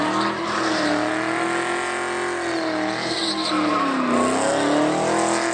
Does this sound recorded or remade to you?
recorded